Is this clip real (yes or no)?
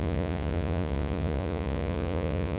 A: no